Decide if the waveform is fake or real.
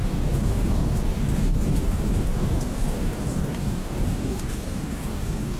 fake